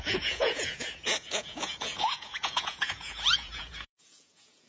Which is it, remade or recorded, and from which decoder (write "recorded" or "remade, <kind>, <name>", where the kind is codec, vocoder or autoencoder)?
remade, vocoder, Vocos